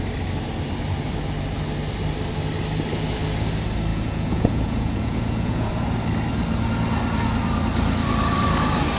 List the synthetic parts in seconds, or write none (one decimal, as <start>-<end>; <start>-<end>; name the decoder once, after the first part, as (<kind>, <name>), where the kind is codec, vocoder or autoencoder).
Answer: 3.9-5.7 (vocoder, Vocos)